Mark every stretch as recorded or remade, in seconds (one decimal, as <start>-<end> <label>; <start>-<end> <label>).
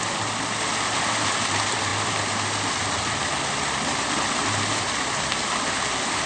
0.0-6.3 recorded